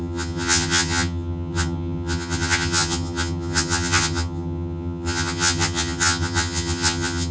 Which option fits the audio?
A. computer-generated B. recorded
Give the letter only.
A